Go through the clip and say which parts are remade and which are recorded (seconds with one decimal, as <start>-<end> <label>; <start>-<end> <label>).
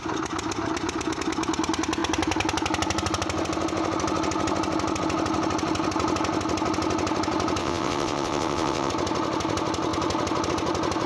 0.0-7.6 recorded; 7.6-8.9 remade; 8.9-11.1 recorded